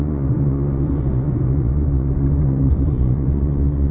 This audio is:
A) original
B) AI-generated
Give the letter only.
B